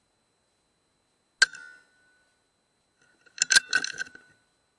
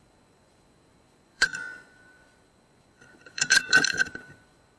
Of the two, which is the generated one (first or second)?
second